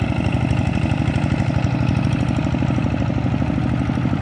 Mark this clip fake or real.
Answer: real